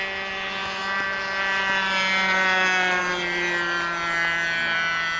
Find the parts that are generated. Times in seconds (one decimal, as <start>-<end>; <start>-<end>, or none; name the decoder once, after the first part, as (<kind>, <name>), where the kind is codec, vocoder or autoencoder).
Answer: none